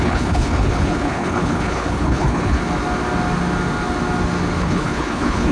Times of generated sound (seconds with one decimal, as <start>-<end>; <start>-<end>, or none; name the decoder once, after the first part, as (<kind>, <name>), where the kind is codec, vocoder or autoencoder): 0.0-2.6 (codec, HILCodec); 4.6-5.5